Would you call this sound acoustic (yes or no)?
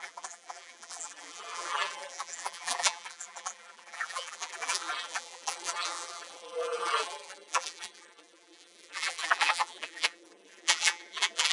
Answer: no